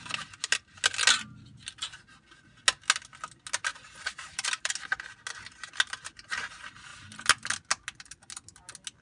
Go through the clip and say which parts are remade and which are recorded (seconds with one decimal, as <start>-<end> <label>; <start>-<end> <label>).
0.0-3.7 recorded; 3.7-4.7 remade; 4.7-9.0 recorded